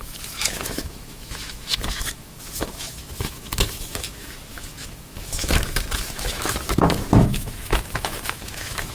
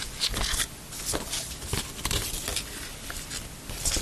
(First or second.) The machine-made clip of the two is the first